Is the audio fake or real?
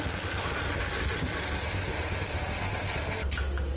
real